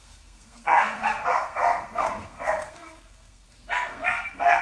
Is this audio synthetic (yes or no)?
yes